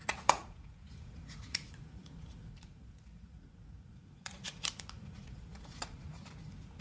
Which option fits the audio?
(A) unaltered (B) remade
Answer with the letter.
B